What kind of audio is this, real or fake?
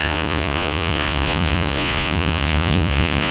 fake